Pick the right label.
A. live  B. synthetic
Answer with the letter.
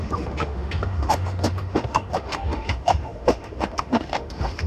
B